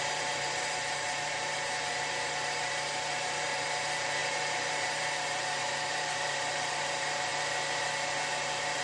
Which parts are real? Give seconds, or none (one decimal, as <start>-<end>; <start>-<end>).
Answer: 7.3-8.2